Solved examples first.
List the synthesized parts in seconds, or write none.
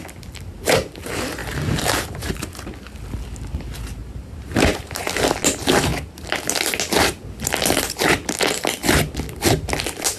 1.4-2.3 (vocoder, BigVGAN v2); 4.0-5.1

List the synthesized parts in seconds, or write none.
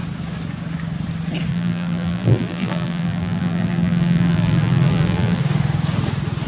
1.5-5.4 (vocoder, BigVGAN v2)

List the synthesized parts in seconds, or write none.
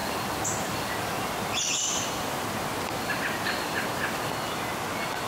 none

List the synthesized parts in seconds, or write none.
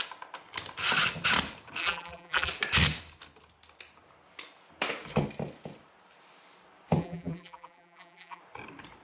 1.8-2.5 (vocoder, BigVGAN v2); 7.0-8.4